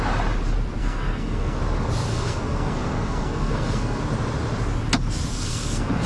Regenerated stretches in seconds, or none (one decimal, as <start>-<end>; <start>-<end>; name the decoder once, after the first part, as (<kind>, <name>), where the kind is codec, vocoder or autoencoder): 0.8-1.6 (codec, SNAC); 2.1-4.0; 5.3-6.1